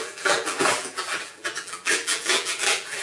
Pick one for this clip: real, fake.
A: fake